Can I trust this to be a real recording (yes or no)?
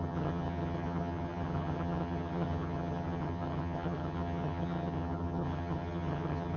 no